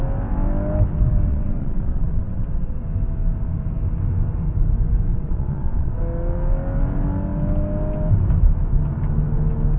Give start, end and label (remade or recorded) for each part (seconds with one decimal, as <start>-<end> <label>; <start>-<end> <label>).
0.0-1.3 recorded; 1.3-2.8 remade; 2.8-5.1 recorded; 5.1-6.0 remade; 6.0-9.8 recorded